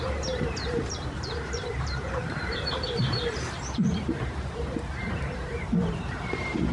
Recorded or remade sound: remade